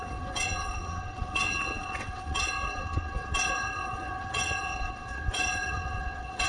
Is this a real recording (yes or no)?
no